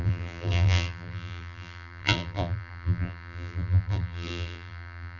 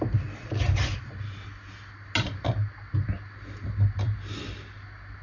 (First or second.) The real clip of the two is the second